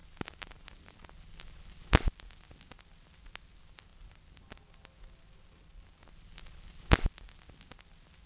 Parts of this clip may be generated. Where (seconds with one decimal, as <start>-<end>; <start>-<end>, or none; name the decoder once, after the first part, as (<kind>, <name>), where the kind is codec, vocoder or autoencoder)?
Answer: none